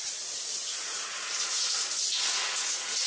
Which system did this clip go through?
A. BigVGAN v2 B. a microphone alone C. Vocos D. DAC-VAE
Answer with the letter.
C